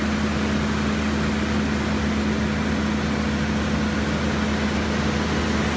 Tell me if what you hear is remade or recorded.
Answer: recorded